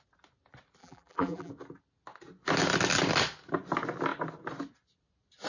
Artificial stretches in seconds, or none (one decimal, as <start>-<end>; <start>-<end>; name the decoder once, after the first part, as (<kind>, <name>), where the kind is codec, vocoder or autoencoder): 0.8-1.5 (vocoder, BigVGAN v2)

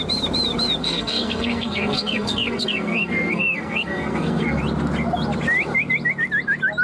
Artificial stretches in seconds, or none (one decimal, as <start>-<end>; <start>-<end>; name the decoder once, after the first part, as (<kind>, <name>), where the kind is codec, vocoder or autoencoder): 0.8-4.6 (codec, SNAC)

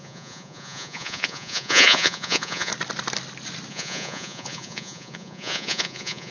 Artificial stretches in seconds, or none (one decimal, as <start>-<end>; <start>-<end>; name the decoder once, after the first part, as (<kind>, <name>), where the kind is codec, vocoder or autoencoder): 0.0-2.7 (vocoder, Vocos); 3.7-6.3

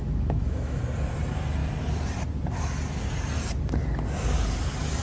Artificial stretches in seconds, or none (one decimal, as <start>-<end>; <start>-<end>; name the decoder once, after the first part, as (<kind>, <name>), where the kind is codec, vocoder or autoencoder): 0.0-0.8 (autoencoder, DAC-VAE)

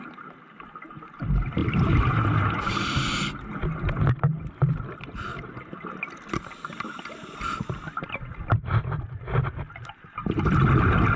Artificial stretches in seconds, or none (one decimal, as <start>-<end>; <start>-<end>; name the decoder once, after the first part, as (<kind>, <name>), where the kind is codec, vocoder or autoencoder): none